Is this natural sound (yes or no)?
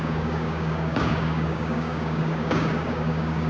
no